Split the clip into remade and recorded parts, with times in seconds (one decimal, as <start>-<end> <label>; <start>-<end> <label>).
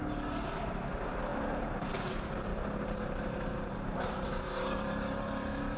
0.0-1.3 recorded; 1.3-1.9 remade; 1.9-2.5 recorded; 2.5-5.8 remade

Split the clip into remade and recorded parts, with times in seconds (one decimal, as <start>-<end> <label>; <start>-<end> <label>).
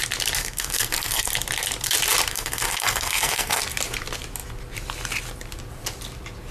0.0-0.4 recorded; 0.4-1.3 remade; 1.3-2.3 recorded; 2.3-3.6 remade; 3.6-6.5 recorded